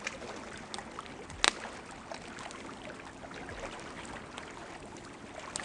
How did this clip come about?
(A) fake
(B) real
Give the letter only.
B